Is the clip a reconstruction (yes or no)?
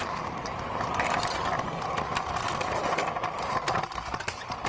no